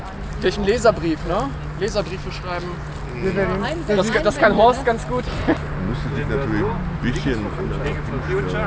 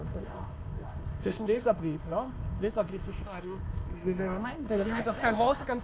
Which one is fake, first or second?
second